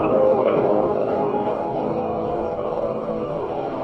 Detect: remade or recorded remade